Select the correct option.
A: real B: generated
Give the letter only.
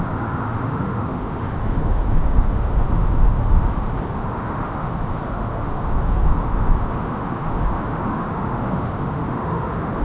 B